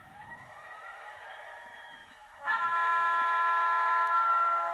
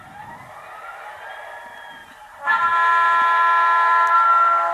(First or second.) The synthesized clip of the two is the first